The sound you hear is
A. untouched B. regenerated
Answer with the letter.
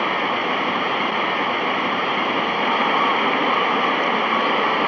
A